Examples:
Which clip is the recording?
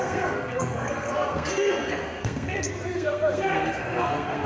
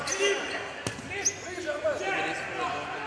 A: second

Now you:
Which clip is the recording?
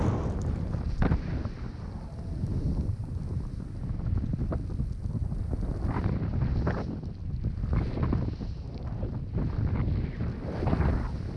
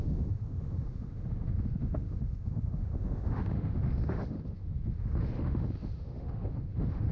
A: first